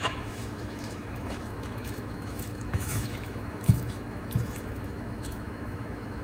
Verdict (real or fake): fake